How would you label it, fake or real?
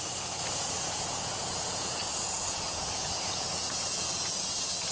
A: fake